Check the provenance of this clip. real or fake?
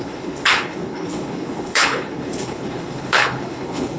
fake